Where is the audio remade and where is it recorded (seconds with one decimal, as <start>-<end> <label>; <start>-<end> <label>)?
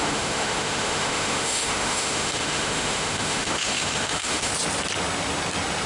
0.0-4.5 remade; 4.5-5.9 recorded